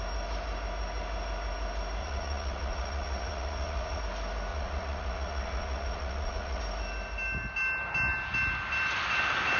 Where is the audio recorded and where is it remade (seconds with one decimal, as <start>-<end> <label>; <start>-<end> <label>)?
0.0-2.0 recorded; 2.0-4.0 remade; 4.0-4.5 recorded; 4.5-6.6 remade; 6.6-9.6 recorded